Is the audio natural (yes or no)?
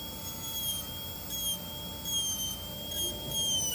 yes